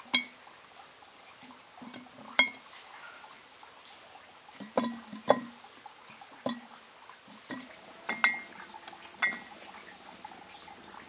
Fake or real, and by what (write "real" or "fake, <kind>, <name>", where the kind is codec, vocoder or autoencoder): real